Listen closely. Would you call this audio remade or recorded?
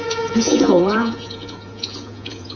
remade